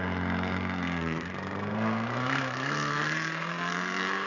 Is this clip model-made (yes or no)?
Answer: yes